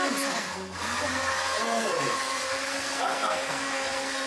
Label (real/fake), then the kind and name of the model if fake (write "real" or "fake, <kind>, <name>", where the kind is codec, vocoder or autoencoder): fake, codec, SNAC